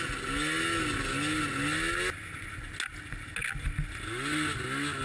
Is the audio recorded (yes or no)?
yes